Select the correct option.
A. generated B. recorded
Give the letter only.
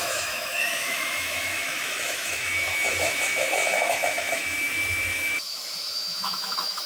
A